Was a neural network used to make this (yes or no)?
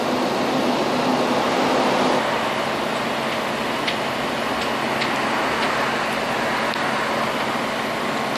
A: no